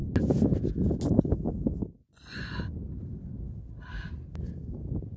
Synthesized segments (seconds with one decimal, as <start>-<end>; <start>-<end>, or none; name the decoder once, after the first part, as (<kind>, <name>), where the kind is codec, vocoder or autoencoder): 2.0-2.6 (vocoder, Vocos)